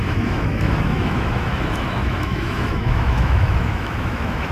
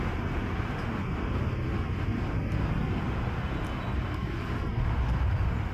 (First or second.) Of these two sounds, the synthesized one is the first